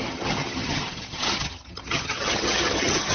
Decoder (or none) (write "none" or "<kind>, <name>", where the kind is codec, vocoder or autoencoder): vocoder, HiFi-GAN